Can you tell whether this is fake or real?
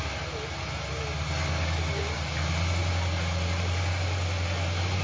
real